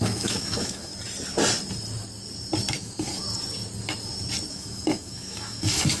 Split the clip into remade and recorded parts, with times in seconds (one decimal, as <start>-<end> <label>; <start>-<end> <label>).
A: 0.0-0.9 remade; 0.9-2.7 recorded; 2.7-3.2 remade; 3.2-4.5 recorded; 4.5-6.0 remade